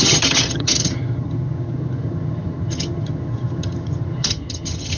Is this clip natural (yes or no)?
no